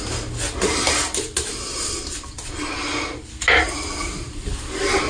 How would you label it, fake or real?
real